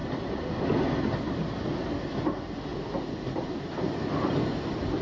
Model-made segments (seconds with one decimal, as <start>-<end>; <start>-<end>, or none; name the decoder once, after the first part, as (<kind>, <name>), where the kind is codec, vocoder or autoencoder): 0.0-0.6 (vocoder, BigVGAN v2); 2.7-4.0